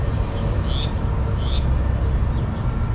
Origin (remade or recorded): recorded